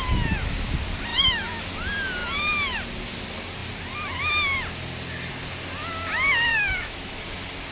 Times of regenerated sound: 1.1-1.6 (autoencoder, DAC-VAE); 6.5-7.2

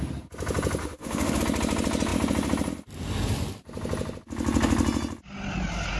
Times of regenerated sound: 0.8-1.4 (autoencoder, DAC-VAE)

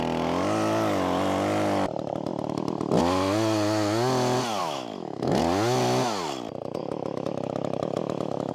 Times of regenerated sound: 4.6-5.4 (autoencoder, DAC-VAE); 6.8-8.5

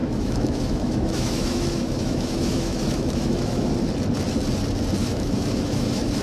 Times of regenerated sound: 0.0-3.7 (autoencoder, DAC-VAE); 5.0-6.2

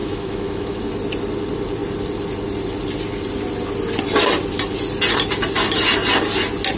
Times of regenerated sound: 0.0-0.8 (autoencoder, DAC-VAE)

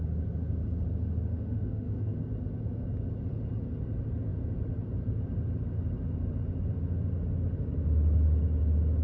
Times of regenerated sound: 1.3-2.2 (autoencoder, DAC-VAE)

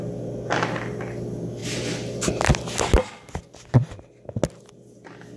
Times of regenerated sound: none

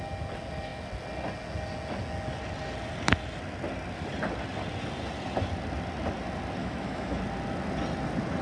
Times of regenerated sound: 6.6-7.2 (autoencoder, DAC-VAE)